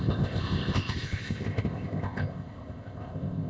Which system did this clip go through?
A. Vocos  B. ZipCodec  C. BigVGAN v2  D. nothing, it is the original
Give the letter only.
B